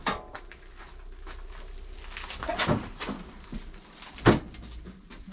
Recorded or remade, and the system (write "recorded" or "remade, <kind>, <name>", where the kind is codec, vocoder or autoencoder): recorded